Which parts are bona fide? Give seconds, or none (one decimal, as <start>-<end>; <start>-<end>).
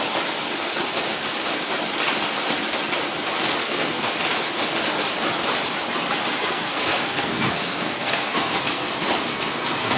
0.0-3.6; 4.1-6.4; 8.9-9.3